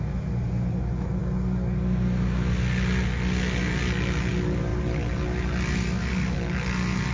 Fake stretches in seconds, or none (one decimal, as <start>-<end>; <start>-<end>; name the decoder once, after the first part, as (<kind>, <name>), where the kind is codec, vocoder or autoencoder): none